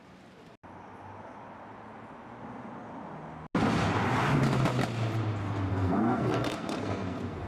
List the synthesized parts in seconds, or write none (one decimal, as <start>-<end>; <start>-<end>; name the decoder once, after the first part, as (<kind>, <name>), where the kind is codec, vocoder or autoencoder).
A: 5.7-7.5 (codec, SNAC)